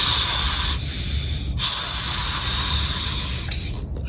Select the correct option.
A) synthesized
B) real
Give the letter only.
B